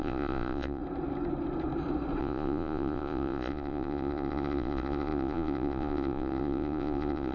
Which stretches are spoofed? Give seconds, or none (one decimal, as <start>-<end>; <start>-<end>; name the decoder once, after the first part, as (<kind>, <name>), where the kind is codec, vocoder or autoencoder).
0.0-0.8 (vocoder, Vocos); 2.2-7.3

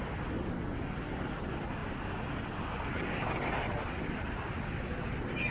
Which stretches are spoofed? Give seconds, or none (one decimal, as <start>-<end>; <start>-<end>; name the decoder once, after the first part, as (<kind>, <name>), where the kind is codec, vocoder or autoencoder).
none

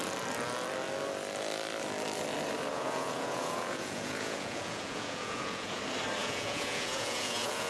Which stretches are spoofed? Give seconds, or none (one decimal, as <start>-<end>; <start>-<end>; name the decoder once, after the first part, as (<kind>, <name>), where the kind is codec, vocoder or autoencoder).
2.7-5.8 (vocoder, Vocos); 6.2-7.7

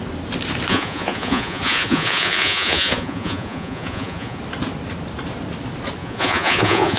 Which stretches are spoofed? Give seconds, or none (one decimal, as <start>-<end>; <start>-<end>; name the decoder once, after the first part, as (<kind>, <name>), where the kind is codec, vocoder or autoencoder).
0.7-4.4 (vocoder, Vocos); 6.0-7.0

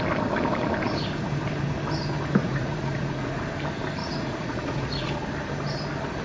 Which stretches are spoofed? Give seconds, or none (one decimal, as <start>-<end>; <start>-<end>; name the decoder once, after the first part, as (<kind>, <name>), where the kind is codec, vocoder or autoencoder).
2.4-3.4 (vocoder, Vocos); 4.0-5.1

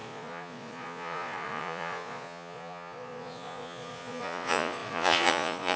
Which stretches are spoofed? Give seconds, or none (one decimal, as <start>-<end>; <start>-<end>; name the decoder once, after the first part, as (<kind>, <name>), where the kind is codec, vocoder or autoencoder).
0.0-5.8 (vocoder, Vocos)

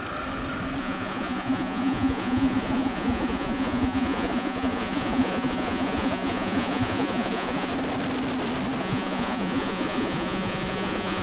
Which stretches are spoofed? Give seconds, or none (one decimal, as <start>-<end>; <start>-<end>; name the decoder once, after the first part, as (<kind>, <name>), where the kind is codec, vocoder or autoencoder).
0.8-7.7 (vocoder, Vocos); 8.8-11.2